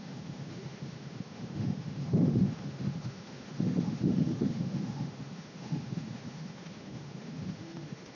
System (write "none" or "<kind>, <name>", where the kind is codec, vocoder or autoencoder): autoencoder, DAC-VAE